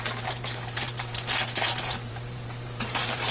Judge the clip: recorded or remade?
remade